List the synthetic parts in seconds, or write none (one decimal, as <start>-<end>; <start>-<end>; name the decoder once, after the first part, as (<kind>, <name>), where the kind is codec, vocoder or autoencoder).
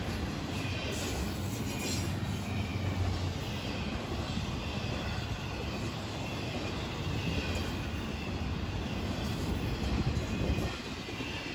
none